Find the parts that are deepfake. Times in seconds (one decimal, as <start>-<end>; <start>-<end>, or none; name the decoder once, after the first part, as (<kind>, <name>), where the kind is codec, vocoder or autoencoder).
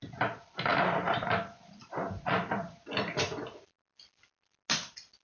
0.7-3.8 (vocoder, BigVGAN v2)